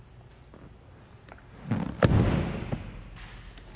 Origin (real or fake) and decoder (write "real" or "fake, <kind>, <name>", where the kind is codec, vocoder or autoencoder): real